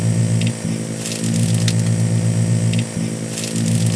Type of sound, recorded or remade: recorded